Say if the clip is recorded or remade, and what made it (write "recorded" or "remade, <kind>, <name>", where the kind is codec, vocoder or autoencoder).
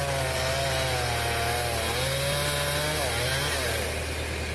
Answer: recorded